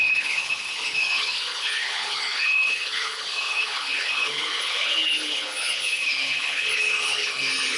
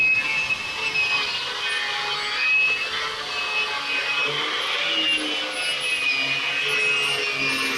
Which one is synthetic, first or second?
first